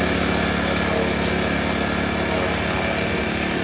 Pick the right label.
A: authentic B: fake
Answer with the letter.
A